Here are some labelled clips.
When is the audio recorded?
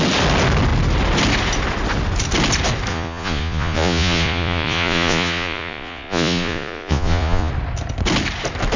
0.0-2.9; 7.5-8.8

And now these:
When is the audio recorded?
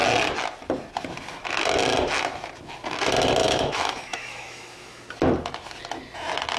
0.0-3.4; 5.0-6.6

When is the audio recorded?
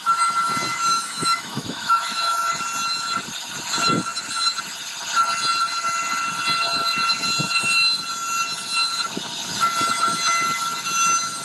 0.0-0.7; 2.5-11.4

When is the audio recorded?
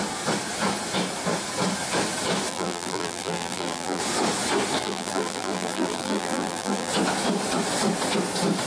0.0-2.5; 4.0-4.8; 6.9-8.7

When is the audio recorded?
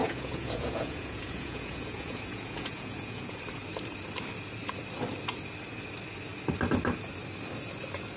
3.4-8.2